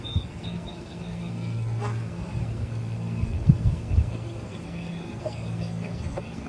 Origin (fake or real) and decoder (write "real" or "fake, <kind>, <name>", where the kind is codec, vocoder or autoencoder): fake, codec, SNAC